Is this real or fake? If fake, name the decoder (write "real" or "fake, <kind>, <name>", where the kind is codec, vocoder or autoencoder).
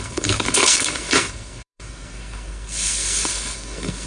fake, codec, SNAC